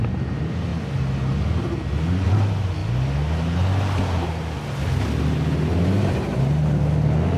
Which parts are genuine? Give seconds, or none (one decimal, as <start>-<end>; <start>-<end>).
0.0-7.4